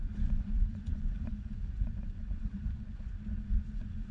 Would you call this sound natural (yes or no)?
no